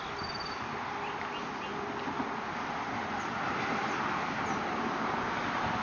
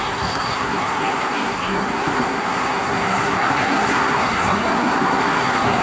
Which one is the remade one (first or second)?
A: second